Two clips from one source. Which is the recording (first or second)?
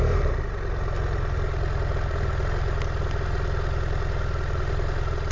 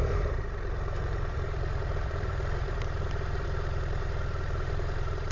first